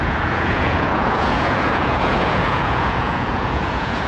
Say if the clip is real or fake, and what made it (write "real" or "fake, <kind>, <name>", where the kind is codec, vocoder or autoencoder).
fake, vocoder, Vocos